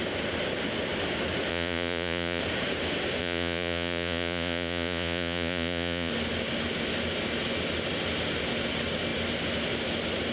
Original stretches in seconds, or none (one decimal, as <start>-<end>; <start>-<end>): 0.0-1.5; 2.4-3.2; 6.1-10.3